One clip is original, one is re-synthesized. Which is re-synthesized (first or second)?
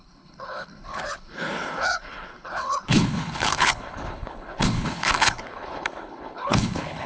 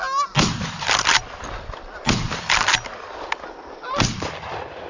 first